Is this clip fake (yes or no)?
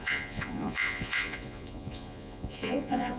yes